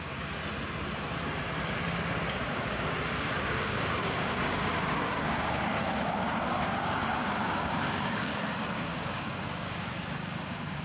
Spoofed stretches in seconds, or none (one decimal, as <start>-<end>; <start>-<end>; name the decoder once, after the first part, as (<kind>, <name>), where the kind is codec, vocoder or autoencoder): 0.0-0.4 (codec, DAC); 2.5-10.8